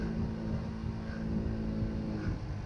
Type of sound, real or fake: real